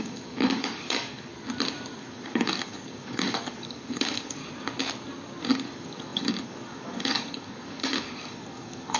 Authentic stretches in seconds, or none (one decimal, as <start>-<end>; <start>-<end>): 1.3-2.0; 4.4-5.4